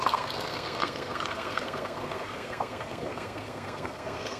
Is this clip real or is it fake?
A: fake